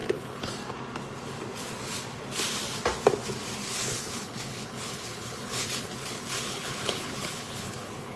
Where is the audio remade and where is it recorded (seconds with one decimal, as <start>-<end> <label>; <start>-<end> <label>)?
0.0-0.5 remade; 0.5-3.6 recorded; 3.6-8.2 remade

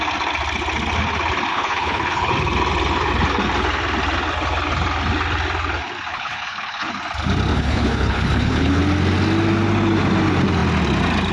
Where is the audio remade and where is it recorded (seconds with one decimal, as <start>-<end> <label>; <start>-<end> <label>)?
0.0-1.5 recorded; 1.5-2.3 remade; 2.3-6.1 recorded; 6.1-6.9 remade; 6.9-7.5 recorded; 7.5-8.8 remade; 8.8-11.3 recorded

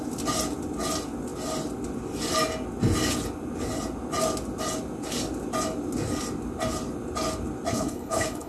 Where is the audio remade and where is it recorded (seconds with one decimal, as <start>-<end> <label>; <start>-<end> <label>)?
0.0-7.7 recorded; 7.7-8.5 remade

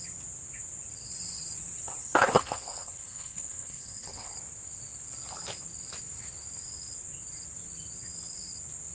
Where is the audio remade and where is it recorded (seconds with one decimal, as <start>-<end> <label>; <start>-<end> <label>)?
0.0-2.0 recorded; 2.0-4.3 remade; 4.3-8.9 recorded

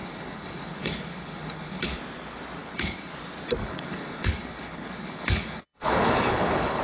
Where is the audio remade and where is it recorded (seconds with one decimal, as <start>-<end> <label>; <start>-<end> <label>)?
0.0-2.0 remade; 2.0-2.6 recorded; 2.6-3.1 remade; 3.1-3.6 recorded; 3.6-6.8 remade

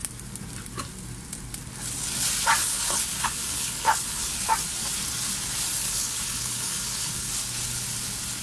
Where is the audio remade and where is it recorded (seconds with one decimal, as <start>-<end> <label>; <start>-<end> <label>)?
0.0-2.6 recorded; 2.6-4.3 remade; 4.3-5.8 recorded; 5.8-7.3 remade; 7.3-8.4 recorded